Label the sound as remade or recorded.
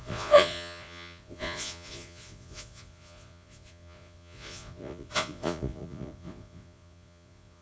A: remade